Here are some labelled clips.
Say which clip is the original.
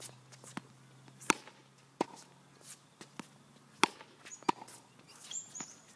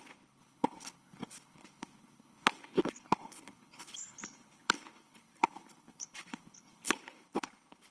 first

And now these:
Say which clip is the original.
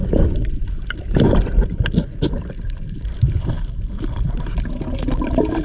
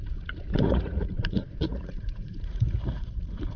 first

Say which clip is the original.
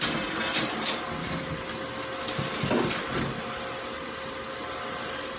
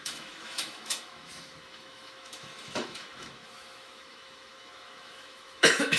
first